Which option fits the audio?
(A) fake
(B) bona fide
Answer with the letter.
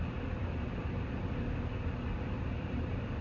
B